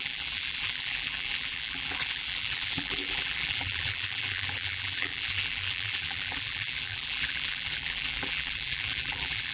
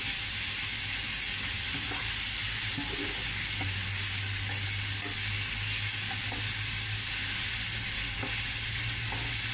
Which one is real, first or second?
second